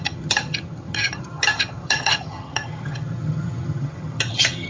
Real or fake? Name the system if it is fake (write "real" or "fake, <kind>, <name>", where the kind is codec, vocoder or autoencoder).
fake, vocoder, HiFi-GAN